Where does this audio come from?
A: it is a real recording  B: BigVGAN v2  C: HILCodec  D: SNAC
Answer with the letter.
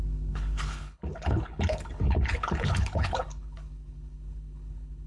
C